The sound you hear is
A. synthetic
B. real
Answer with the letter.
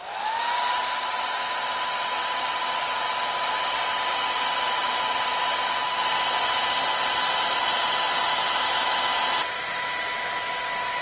B